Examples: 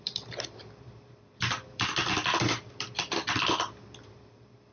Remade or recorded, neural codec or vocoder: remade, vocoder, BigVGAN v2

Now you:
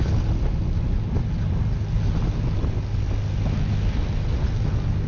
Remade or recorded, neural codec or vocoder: recorded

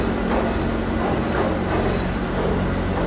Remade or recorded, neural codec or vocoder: recorded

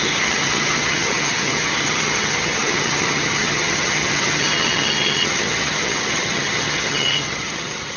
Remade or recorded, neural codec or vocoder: remade, vocoder, HiFi-GAN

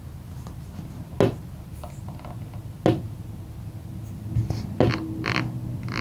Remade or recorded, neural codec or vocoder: recorded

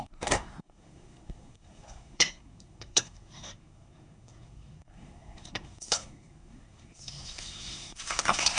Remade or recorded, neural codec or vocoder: remade, codec, SNAC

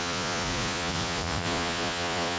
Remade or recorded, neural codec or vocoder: remade, vocoder, Vocos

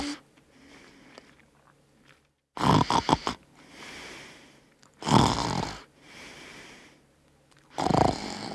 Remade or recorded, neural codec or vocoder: recorded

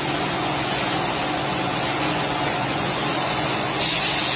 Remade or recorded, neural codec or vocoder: remade, vocoder, Vocos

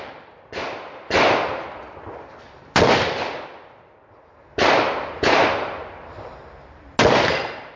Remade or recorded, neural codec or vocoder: recorded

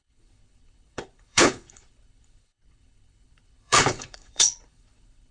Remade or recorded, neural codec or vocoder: remade, codec, HILCodec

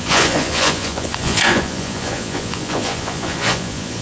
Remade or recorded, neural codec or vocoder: remade, vocoder, Vocos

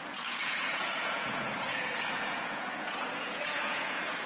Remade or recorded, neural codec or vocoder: remade, vocoder, Vocos